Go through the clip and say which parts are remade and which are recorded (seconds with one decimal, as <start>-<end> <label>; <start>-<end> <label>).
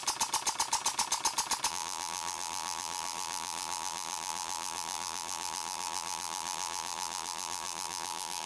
0.0-1.7 recorded; 1.7-8.5 remade